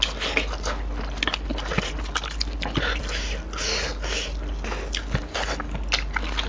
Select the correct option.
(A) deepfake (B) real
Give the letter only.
B